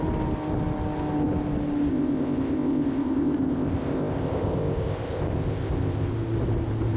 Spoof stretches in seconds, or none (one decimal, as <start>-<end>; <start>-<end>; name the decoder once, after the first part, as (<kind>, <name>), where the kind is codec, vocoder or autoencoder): 1.9-6.1 (codec, ZipCodec)